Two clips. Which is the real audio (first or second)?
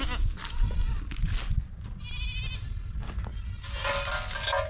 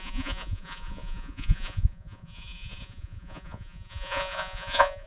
first